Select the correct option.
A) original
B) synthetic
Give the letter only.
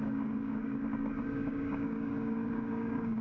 B